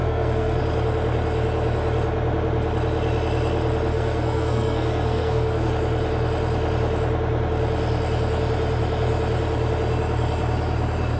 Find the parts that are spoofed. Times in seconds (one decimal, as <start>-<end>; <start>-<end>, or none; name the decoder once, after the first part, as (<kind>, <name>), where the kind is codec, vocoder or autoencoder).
0.0-0.6 (codec, SNAC); 3.9-5.7